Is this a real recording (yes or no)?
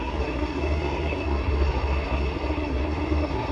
no